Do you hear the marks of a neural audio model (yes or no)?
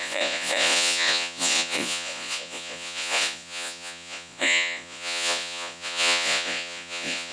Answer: yes